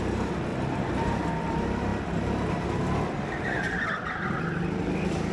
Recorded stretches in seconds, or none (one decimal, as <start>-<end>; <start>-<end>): 0.0-0.5; 1.1-5.3